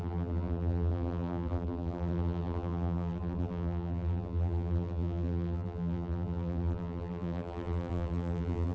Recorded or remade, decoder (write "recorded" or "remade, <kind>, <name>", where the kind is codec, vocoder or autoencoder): remade, vocoder, BigVGAN v2